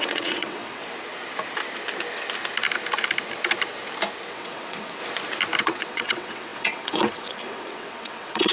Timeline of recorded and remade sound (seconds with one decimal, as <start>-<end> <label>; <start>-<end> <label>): 0.0-0.8 remade; 0.8-4.3 recorded; 4.3-5.0 remade; 5.0-5.6 recorded; 5.6-8.5 remade

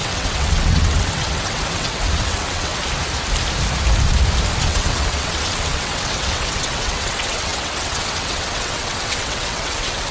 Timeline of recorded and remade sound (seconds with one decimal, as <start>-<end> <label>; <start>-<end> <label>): 0.0-2.7 remade; 2.7-4.6 recorded; 4.6-10.1 remade

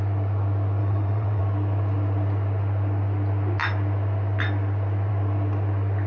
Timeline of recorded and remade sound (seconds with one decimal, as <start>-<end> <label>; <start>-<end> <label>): 0.0-0.8 recorded; 0.8-1.4 remade; 1.4-6.1 recorded

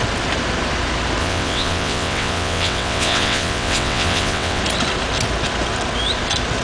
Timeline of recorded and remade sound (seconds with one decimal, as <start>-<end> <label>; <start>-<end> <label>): 0.0-1.2 recorded; 1.2-4.6 remade; 4.6-6.6 recorded